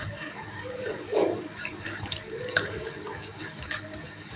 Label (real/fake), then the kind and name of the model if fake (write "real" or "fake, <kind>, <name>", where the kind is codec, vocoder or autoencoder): fake, codec, DAC